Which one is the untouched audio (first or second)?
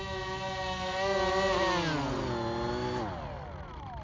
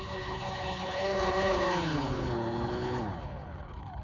first